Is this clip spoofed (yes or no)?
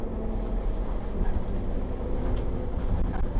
no